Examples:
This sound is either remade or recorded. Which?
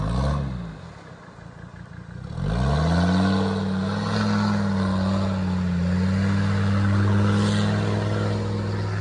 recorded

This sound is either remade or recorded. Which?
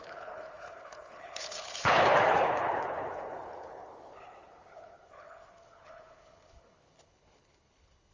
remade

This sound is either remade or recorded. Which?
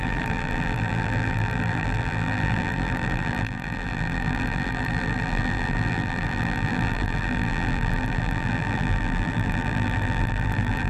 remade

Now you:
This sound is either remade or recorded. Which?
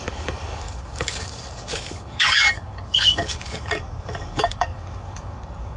remade